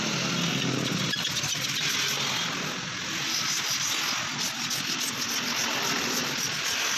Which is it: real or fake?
real